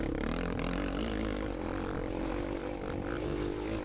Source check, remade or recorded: recorded